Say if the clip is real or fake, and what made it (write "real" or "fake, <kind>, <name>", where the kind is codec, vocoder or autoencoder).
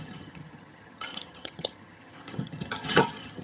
fake, vocoder, HiFi-GAN